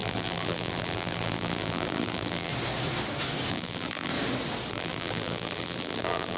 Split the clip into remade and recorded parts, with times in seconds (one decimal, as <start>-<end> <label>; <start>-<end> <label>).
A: 0.0-2.5 remade; 2.5-3.5 recorded; 3.5-4.1 remade; 4.1-4.7 recorded; 4.7-6.4 remade

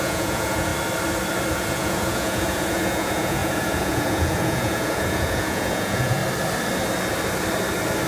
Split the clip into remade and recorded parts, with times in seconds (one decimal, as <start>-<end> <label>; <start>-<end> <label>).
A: 0.0-0.7 remade; 0.7-1.5 recorded; 1.5-6.2 remade; 6.2-8.1 recorded

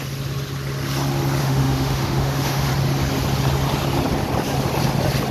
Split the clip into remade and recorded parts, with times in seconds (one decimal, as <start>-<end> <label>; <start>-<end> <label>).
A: 0.0-1.4 recorded; 1.4-2.7 remade; 2.7-5.3 recorded

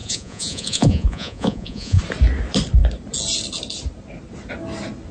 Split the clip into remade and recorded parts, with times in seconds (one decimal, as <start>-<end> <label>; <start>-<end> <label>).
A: 0.0-2.0 remade; 2.0-5.1 recorded

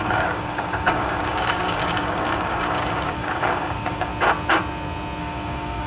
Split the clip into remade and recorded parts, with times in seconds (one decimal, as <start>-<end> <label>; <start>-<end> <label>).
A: 0.0-4.1 remade; 4.1-5.2 recorded; 5.2-5.9 remade